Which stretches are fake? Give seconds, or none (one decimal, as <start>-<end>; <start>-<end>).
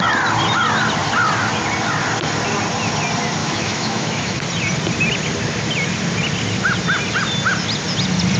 3.4-4.4